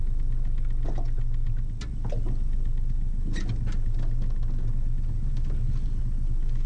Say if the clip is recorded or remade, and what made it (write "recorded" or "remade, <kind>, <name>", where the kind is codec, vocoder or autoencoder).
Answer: recorded